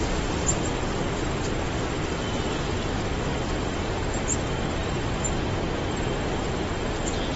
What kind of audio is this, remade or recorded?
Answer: recorded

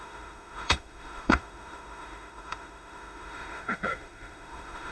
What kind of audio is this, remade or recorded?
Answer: remade